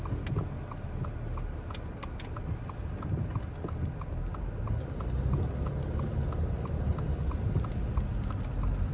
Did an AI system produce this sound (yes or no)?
no